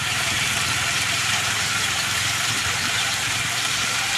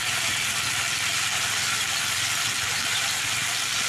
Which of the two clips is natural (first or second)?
second